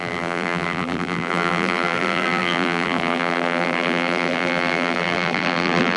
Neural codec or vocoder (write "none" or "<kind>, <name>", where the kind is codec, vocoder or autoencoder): vocoder, BigVGAN v2